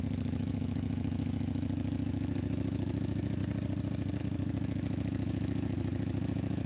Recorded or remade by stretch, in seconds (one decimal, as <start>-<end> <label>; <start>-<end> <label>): 0.0-3.4 remade; 3.4-4.2 recorded; 4.2-6.7 remade